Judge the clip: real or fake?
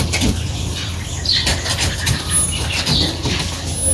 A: real